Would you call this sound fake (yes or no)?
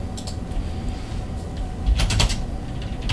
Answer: no